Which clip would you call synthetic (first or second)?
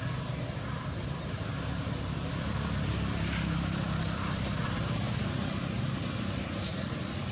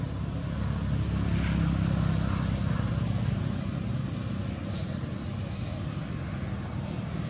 first